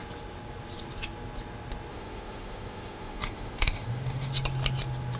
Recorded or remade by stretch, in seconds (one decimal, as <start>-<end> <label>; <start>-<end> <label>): 0.0-1.9 recorded; 1.9-4.3 remade; 4.3-5.2 recorded